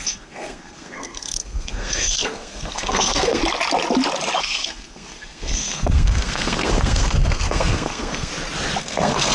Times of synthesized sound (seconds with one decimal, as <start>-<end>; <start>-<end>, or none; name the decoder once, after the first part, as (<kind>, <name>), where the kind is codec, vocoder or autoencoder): 0.0-3.4 (codec, SNAC); 4.4-8.3; 8.8-9.3